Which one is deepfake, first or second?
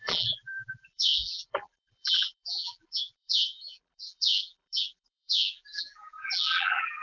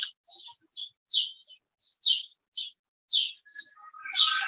first